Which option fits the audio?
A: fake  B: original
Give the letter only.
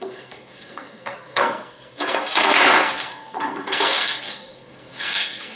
A